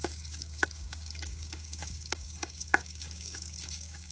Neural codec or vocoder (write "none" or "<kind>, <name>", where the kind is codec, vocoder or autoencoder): codec, DAC